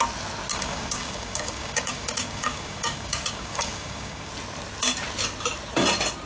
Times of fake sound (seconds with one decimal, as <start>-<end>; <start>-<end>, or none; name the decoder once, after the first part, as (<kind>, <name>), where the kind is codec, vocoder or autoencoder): 0.5-4.3 (codec, DAC)